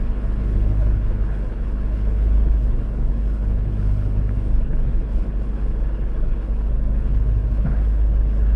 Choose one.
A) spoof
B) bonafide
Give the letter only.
A